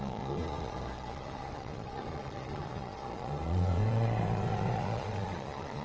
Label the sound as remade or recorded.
remade